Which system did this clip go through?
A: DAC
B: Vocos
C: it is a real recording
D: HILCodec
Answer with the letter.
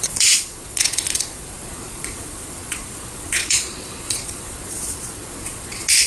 B